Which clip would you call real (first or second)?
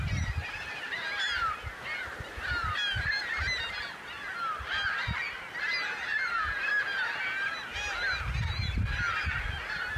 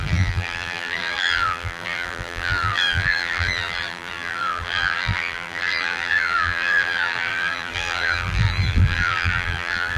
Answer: first